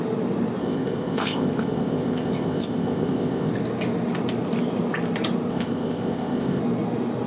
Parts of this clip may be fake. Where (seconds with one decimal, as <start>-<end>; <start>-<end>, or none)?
0.6-3.5; 5.5-6.6